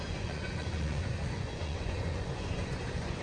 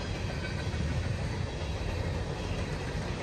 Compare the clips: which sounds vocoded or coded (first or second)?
first